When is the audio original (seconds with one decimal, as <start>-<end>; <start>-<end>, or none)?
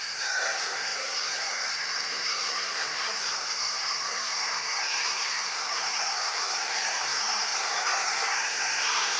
none